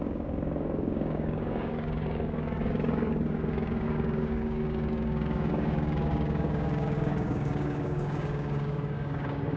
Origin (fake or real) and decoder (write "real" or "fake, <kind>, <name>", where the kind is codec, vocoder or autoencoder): fake, codec, DAC